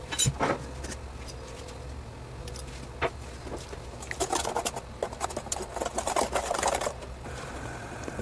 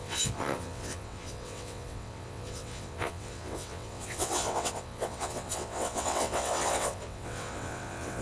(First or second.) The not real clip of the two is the second